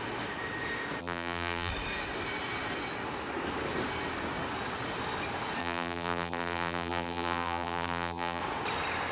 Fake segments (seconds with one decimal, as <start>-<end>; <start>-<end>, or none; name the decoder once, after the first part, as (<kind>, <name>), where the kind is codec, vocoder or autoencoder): 1.0-1.7 (vocoder, BigVGAN v2); 5.6-8.4